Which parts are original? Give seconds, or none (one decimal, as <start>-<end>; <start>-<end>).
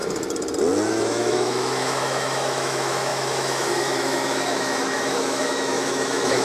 0.0-0.9